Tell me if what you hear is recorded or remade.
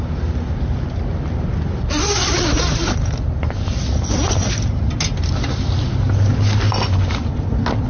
recorded